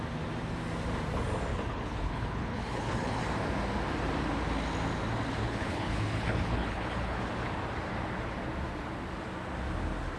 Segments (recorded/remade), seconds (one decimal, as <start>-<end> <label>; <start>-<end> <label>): 0.0-1.5 recorded; 1.5-3.2 remade; 3.2-5.4 recorded; 5.4-7.2 remade; 7.2-10.2 recorded